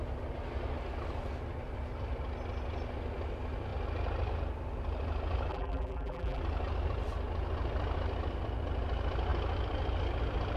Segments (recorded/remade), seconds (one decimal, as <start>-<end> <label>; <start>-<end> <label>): 0.0-5.5 recorded; 5.5-6.4 remade; 6.4-10.6 recorded